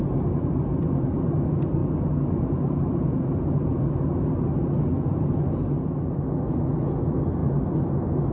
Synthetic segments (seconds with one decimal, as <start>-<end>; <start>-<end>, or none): none